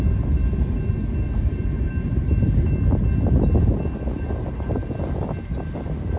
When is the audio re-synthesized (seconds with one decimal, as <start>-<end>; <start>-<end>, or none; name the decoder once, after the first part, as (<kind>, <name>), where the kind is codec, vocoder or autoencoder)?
none